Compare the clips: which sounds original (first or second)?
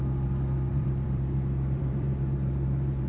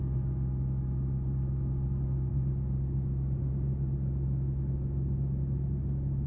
second